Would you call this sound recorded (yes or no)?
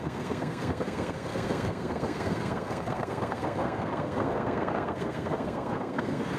no